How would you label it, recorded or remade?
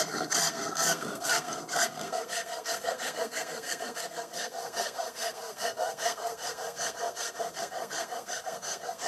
remade